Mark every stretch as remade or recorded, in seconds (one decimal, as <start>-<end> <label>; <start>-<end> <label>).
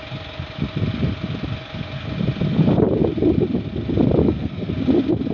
0.0-4.2 recorded; 4.2-4.7 remade; 4.7-5.3 recorded